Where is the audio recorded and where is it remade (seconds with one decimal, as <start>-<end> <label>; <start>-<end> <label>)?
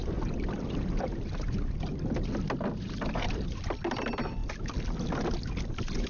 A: 0.0-6.1 recorded